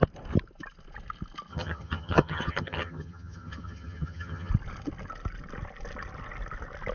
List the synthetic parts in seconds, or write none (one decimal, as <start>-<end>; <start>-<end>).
1.5-4.5